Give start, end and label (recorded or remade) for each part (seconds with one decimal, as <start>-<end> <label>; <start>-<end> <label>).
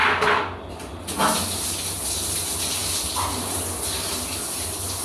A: 0.0-5.0 recorded